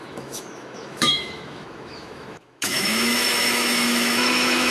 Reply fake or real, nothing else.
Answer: fake